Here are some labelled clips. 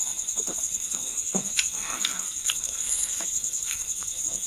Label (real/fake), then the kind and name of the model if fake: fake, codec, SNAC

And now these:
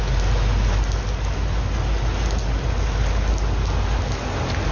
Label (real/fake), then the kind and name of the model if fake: real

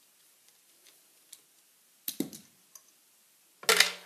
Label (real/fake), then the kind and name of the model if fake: real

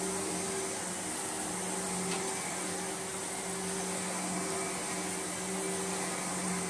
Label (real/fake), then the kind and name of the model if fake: real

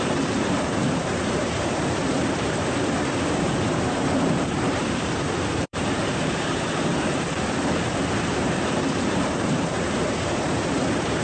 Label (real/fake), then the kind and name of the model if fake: fake, vocoder, BigVGAN v2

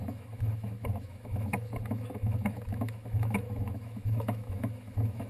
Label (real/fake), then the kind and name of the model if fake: fake, autoencoder, DAC-VAE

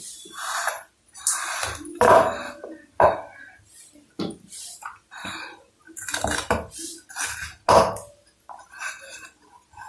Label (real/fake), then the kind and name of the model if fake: real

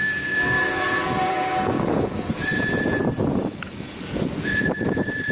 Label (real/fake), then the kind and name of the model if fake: fake, vocoder, Vocos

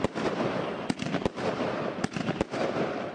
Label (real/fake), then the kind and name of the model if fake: fake, vocoder, BigVGAN v2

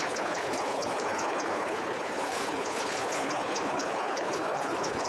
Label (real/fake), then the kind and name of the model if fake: fake, codec, HILCodec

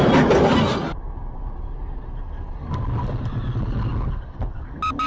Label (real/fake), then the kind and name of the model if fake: real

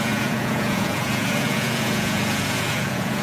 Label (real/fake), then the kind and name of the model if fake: fake, vocoder, Vocos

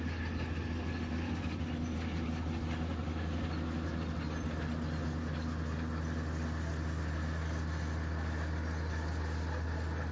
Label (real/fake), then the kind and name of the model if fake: real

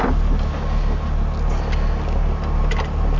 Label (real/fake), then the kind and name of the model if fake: real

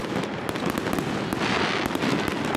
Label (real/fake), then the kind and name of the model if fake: real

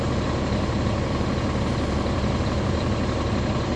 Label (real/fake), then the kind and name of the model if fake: real